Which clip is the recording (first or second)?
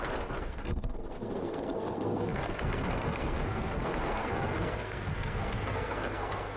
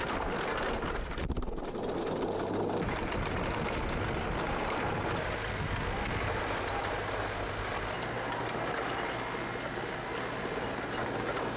second